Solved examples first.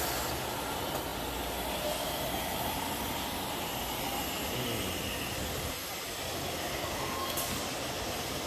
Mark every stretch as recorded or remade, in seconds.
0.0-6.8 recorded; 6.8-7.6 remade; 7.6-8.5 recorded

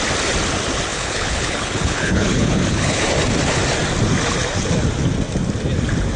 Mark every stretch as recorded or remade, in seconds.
0.0-0.9 recorded; 0.9-3.0 remade; 3.0-6.2 recorded

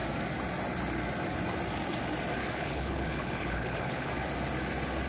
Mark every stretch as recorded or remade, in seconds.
0.0-2.4 recorded; 2.4-4.1 remade; 4.1-5.1 recorded

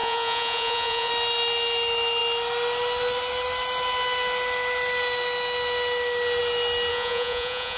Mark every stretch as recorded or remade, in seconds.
0.0-1.1 remade; 1.1-6.9 recorded; 6.9-7.8 remade

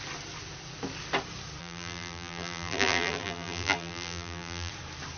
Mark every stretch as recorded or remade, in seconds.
0.0-1.6 recorded; 1.6-4.7 remade; 4.7-5.2 recorded

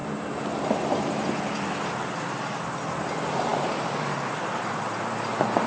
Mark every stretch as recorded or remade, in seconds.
0.0-3.5 recorded; 3.5-5.3 remade; 5.3-5.7 recorded

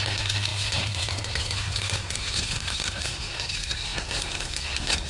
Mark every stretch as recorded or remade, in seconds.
0.0-5.1 remade

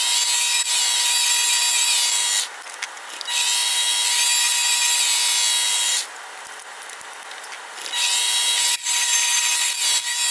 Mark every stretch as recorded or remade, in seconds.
0.0-10.3 recorded